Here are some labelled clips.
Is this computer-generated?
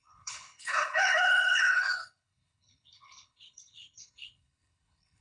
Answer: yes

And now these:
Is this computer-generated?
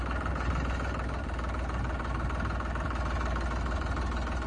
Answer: no